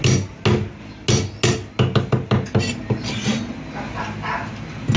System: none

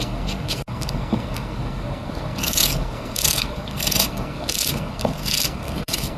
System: codec, SNAC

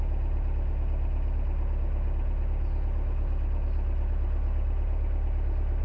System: none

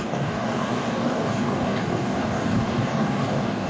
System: codec, DAC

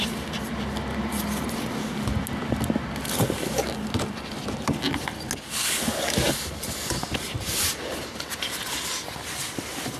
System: none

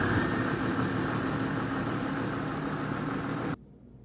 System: none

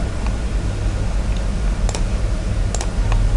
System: none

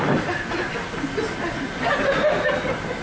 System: none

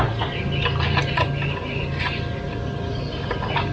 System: none